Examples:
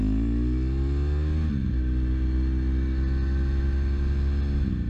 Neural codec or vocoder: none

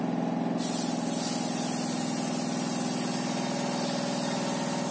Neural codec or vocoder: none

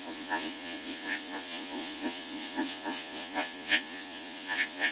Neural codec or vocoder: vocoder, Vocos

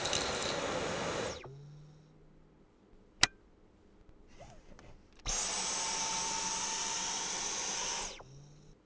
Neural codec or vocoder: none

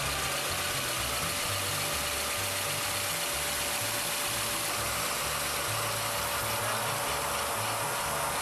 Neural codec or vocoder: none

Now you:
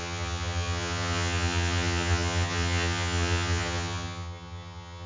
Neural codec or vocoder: vocoder, HiFi-GAN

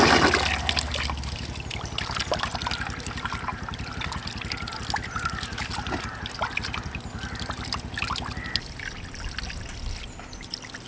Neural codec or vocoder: none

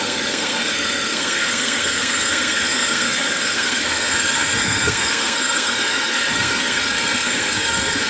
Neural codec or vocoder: codec, SNAC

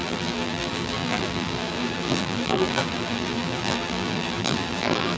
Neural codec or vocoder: vocoder, BigVGAN v2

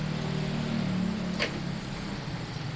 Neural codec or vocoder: none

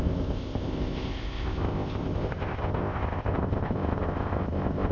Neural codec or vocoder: codec, ZipCodec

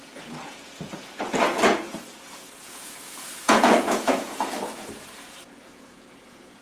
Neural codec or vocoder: vocoder, Vocos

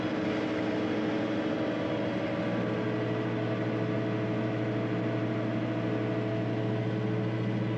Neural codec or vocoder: none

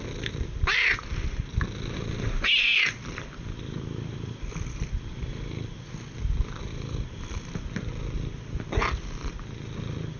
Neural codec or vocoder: none